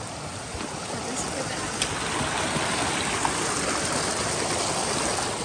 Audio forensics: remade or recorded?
recorded